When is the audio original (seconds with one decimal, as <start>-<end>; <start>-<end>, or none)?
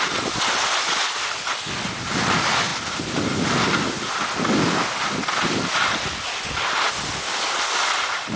0.0-8.4